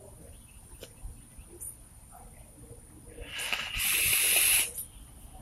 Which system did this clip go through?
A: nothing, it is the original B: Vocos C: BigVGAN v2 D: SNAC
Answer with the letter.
C